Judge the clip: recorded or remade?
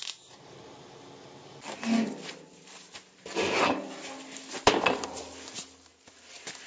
recorded